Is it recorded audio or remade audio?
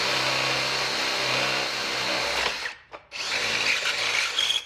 recorded